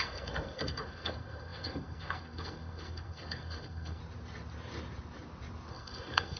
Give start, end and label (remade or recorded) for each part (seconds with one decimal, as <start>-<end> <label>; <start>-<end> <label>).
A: 0.0-4.0 remade; 4.0-5.7 recorded; 5.7-6.4 remade